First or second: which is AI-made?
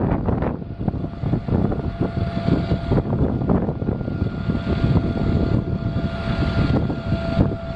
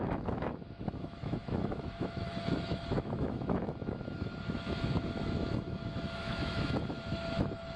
second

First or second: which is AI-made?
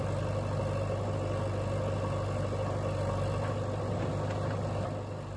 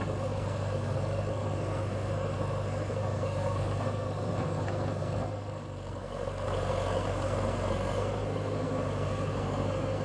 second